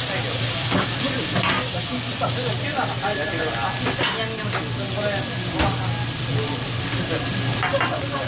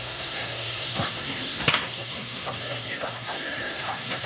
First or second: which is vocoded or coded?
second